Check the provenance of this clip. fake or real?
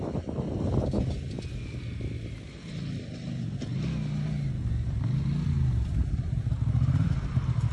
real